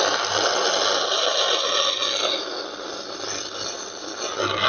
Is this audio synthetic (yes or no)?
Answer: no